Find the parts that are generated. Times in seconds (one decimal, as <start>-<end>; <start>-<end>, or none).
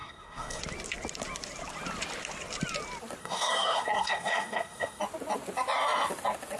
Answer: 0.0-0.6; 3.2-5.0